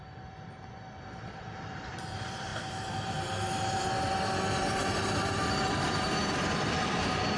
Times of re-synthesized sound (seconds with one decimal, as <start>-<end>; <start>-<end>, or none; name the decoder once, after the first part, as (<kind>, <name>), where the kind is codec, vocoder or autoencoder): 0.0-2.5 (vocoder, BigVGAN v2); 5.7-7.4